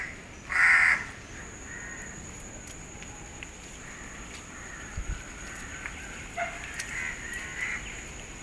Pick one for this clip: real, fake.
real